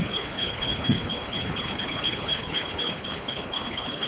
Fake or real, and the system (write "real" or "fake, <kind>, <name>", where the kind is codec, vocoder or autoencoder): fake, codec, HILCodec